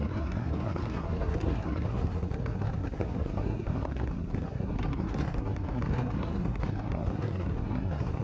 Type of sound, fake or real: fake